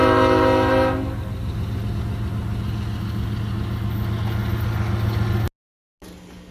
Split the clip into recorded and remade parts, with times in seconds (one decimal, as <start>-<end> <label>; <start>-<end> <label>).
0.0-6.5 recorded